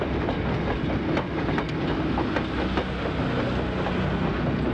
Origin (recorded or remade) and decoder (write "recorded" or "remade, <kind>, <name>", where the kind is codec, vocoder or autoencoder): recorded